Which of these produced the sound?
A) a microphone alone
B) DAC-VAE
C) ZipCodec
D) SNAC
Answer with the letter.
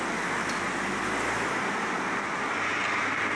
A